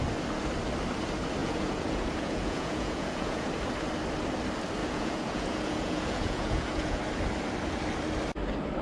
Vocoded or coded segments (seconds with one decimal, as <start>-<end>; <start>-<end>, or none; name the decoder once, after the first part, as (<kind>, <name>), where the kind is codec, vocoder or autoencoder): 1.4-3.5 (vocoder, Vocos); 4.8-7.0